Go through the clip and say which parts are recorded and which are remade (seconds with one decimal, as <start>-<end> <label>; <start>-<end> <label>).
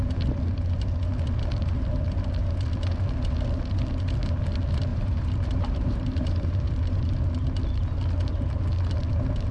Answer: 0.0-4.9 recorded; 4.9-7.1 remade; 7.1-9.5 recorded